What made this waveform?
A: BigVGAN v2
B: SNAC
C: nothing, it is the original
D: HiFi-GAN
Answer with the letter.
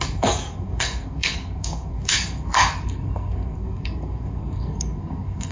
B